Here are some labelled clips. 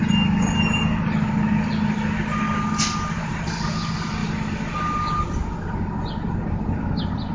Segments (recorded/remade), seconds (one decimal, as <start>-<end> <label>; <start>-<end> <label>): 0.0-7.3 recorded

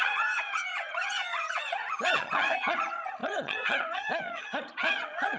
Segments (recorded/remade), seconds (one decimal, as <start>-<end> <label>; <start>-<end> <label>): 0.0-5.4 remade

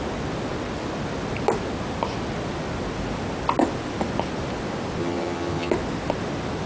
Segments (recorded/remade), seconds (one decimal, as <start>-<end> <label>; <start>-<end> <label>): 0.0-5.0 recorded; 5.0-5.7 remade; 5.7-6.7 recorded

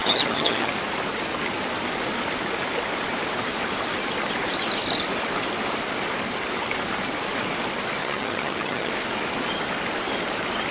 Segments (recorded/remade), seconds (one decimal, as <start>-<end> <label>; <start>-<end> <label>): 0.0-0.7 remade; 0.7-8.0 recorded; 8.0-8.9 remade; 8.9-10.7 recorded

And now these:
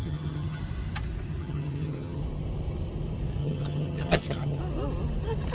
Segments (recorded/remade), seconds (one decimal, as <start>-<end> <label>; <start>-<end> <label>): 0.0-0.6 remade; 0.6-1.4 recorded; 1.4-2.2 remade; 2.2-3.4 recorded; 3.4-4.6 remade; 4.6-5.5 recorded

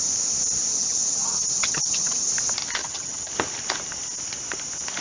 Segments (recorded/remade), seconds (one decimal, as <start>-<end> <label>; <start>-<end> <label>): 0.0-0.7 recorded; 0.7-2.3 remade; 2.3-2.8 recorded; 2.8-3.3 remade; 3.3-5.0 recorded

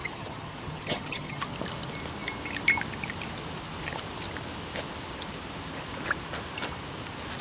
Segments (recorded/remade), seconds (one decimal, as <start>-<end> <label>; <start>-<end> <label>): 0.0-1.4 remade; 1.4-7.4 recorded